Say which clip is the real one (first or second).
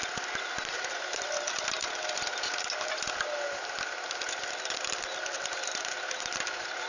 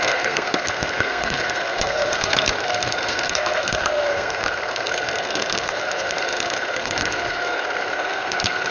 first